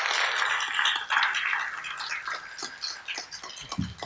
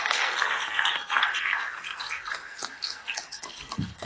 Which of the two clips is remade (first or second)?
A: second